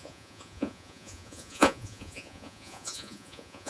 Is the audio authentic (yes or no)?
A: no